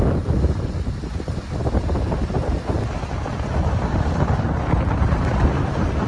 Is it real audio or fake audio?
real